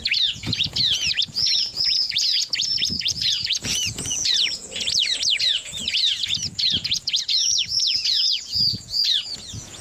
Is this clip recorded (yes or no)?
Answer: no